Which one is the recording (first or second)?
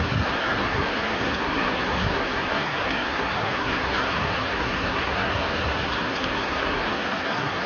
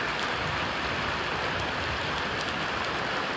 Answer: second